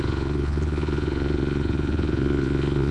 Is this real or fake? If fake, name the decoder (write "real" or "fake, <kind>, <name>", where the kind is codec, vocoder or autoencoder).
fake, vocoder, Vocos